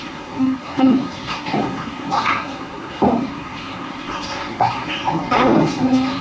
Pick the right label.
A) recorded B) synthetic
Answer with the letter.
B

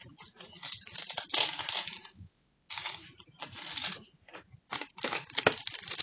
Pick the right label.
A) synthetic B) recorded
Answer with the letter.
B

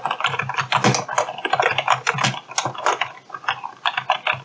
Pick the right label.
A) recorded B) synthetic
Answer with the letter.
A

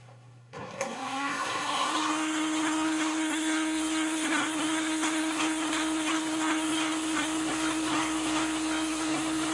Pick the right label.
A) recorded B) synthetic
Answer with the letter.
B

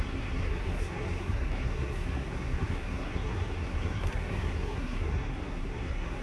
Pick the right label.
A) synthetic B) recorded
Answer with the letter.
A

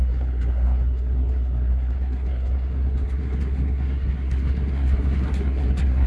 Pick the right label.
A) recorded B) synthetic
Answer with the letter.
B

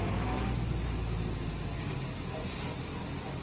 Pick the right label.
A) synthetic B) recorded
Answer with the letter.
B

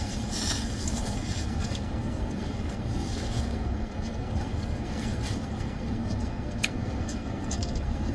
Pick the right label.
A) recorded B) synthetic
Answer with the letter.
B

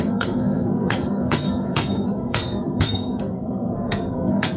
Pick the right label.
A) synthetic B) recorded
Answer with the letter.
A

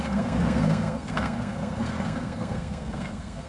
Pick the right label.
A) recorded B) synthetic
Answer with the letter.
B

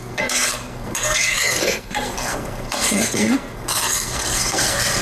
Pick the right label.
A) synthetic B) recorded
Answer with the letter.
A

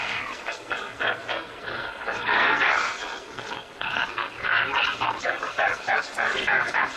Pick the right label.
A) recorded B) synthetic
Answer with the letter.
B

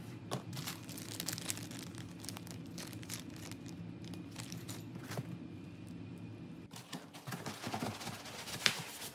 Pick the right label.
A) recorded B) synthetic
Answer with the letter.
A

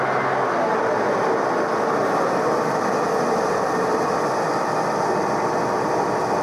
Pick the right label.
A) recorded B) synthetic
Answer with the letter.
A